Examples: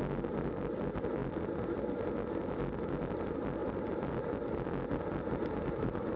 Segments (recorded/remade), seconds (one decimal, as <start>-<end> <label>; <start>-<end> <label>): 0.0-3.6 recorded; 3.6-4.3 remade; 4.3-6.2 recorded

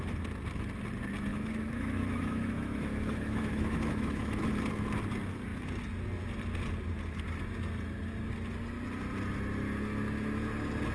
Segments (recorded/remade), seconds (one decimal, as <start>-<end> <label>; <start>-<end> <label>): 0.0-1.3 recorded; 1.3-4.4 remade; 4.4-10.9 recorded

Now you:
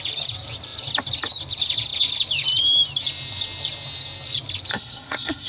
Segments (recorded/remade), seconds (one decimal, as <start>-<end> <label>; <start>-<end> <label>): 0.0-4.7 recorded; 4.7-5.5 remade

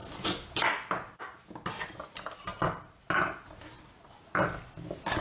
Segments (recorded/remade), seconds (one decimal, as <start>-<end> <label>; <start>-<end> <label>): 0.0-5.2 recorded

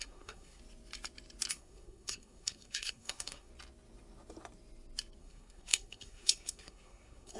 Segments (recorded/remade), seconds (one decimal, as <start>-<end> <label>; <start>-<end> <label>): 0.0-0.6 remade; 0.6-1.5 recorded; 1.5-3.5 remade; 3.5-5.2 recorded; 5.2-7.4 remade